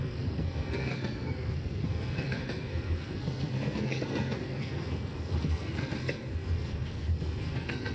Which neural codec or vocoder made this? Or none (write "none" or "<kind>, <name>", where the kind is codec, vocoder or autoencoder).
codec, SNAC